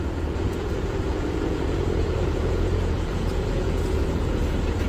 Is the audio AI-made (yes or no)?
yes